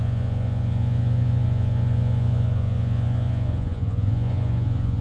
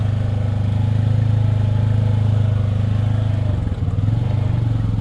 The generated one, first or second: first